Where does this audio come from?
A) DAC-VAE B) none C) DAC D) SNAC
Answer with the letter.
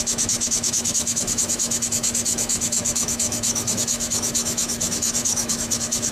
A